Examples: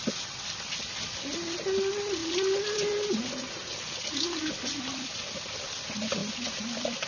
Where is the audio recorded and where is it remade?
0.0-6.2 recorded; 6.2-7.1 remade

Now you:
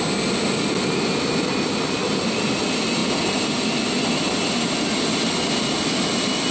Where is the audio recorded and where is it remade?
0.0-6.5 recorded

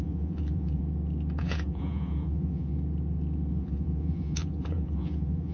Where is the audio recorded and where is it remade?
0.0-0.8 remade; 0.8-1.4 recorded; 1.4-2.7 remade; 2.7-3.5 recorded; 3.5-5.5 remade

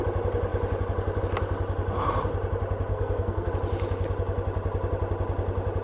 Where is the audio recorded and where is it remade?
0.0-2.9 recorded; 2.9-3.5 remade; 3.5-5.8 recorded

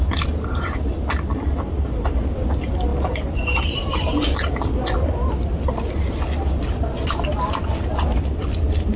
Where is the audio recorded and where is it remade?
0.0-9.0 recorded

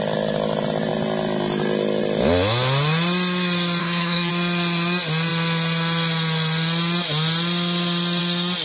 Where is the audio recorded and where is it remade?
0.0-3.8 recorded; 3.8-4.3 remade; 4.3-8.6 recorded